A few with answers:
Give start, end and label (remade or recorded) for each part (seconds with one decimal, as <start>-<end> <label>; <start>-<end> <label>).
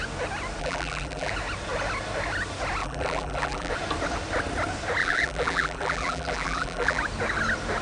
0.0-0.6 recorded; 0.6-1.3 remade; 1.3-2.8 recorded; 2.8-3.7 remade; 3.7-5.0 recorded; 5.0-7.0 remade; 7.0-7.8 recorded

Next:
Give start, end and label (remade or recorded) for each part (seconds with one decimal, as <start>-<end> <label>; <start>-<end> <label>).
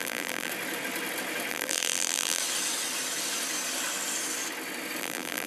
0.0-0.5 remade; 0.5-1.5 recorded; 1.5-2.4 remade; 2.4-5.0 recorded; 5.0-5.5 remade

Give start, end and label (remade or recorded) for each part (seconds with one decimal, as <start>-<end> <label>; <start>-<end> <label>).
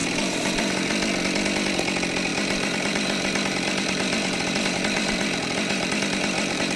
0.0-0.9 remade; 0.9-2.3 recorded; 2.3-6.8 remade